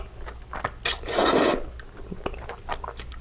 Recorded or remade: recorded